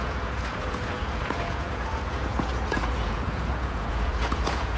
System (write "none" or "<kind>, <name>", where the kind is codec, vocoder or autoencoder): vocoder, Vocos